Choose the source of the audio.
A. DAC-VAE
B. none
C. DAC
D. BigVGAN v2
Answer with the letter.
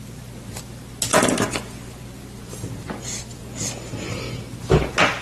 B